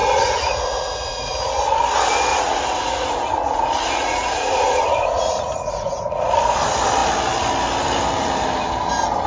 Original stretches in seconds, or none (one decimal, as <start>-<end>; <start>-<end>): 1.3-2.3; 6.3-9.3